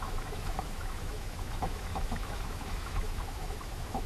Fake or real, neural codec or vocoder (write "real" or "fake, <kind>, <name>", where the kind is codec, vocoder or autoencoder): fake, autoencoder, DAC-VAE